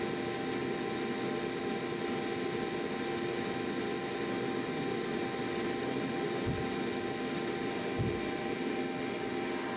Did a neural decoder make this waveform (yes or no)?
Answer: no